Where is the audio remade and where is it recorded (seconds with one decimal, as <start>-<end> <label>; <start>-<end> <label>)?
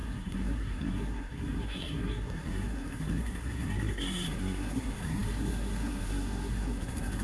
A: 0.0-7.2 remade